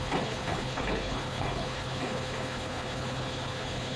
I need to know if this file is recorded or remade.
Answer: remade